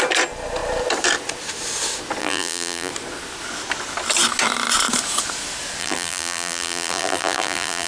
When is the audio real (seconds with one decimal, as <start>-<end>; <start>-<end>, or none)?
0.0-2.2; 2.9-5.8